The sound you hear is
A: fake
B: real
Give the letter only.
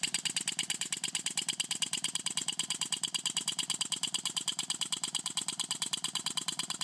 B